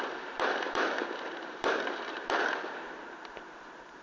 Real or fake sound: fake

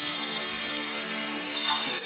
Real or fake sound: fake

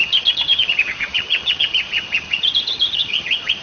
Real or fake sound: fake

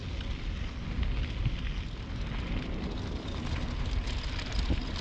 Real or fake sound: real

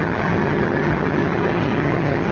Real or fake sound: fake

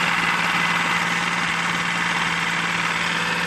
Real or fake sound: real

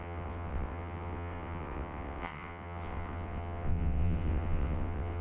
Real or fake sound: fake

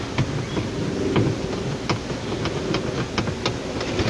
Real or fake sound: real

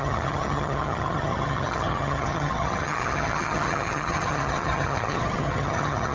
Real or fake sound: fake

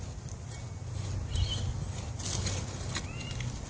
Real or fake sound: real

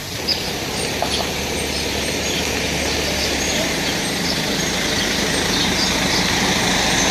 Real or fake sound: fake